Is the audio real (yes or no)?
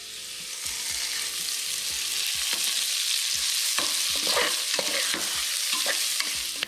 yes